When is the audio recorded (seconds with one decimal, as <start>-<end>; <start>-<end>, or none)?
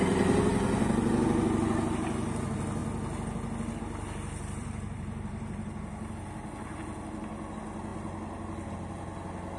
0.0-4.6; 5.8-9.6